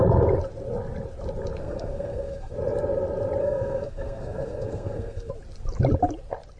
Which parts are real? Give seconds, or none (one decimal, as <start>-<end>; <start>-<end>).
0.0-1.6; 2.5-3.4; 5.3-6.6